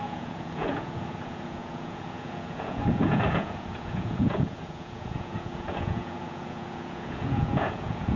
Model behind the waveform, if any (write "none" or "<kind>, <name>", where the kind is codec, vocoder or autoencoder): vocoder, Vocos